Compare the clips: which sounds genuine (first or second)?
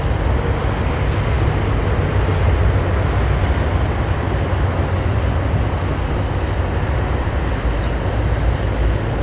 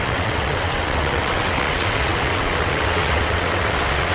first